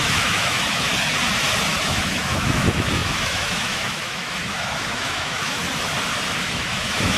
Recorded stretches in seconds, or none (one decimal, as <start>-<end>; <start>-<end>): 0.9-1.8; 5.6-6.4